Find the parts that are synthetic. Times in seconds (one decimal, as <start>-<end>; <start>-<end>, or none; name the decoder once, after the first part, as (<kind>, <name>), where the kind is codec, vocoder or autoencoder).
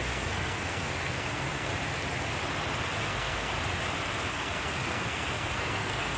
0.0-1.7 (codec, SNAC); 3.0-3.5; 4.3-6.2